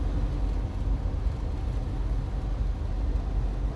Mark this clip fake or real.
real